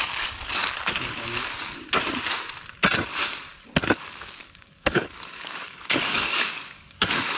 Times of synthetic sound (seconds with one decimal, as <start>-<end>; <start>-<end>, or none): 0.0-0.6; 3.8-7.4